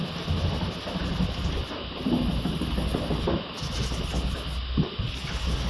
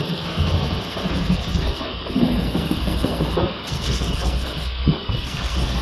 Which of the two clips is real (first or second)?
first